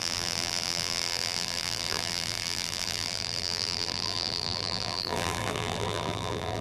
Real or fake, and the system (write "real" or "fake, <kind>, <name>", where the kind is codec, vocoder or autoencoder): fake, vocoder, BigVGAN v2